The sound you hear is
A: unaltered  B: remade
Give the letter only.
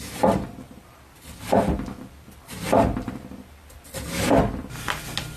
A